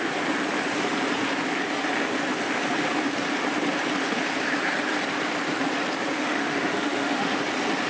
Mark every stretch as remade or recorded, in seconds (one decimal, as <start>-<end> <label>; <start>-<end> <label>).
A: 0.0-6.1 recorded; 6.1-7.3 remade; 7.3-7.9 recorded